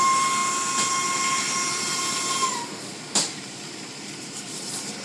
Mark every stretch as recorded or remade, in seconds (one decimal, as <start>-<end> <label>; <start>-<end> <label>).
0.0-0.4 remade; 0.4-3.4 recorded; 3.4-5.0 remade